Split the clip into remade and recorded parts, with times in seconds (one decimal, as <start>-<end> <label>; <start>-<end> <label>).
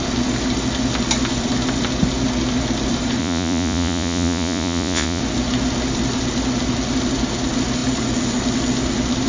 0.0-3.2 recorded; 3.2-5.2 remade; 5.2-9.3 recorded